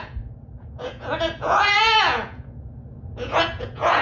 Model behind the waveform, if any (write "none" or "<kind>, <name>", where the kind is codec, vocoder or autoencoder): vocoder, Vocos